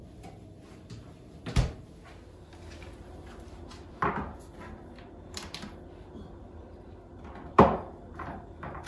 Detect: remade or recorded remade